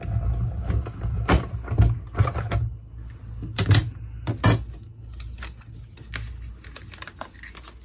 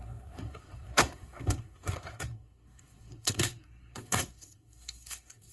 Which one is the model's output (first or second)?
second